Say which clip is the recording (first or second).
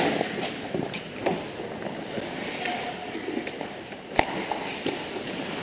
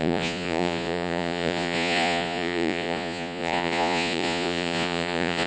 first